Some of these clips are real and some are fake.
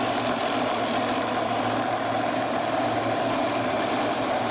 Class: real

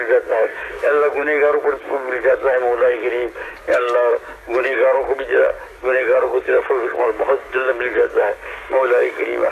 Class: fake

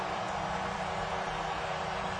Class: fake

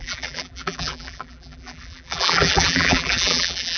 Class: fake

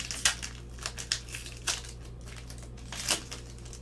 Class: real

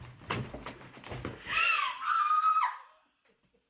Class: fake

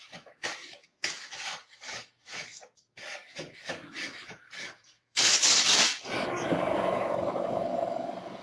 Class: fake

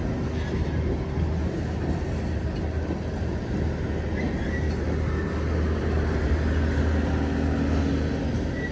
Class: real